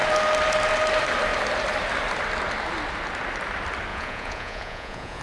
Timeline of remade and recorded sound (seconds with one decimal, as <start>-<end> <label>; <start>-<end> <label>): 0.0-3.9 recorded; 3.9-5.2 remade